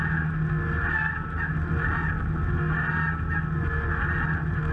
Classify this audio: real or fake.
real